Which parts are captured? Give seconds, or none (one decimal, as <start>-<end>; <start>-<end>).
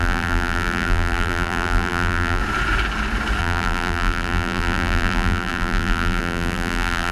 2.4-3.4